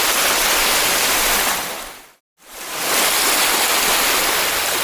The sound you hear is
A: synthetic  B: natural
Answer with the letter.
B